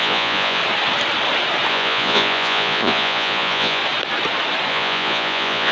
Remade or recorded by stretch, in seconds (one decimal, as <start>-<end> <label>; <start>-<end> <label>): 0.0-0.6 remade; 0.6-1.7 recorded; 1.7-3.8 remade; 3.8-4.7 recorded; 4.7-5.7 remade